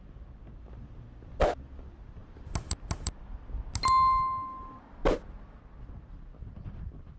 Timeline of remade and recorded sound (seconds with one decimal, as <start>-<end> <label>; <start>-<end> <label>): 0.0-7.2 recorded